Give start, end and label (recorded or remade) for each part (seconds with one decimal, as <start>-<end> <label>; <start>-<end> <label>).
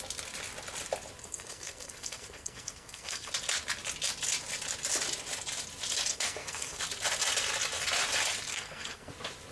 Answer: 0.0-1.2 recorded; 1.2-3.3 remade; 3.3-6.1 recorded; 6.1-6.8 remade; 6.8-8.5 recorded; 8.5-9.1 remade; 9.1-9.5 recorded